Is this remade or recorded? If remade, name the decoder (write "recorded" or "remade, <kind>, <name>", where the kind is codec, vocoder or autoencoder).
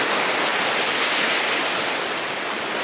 recorded